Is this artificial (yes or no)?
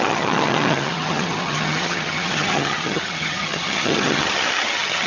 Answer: yes